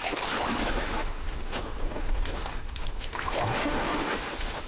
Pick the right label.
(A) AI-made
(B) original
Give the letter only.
A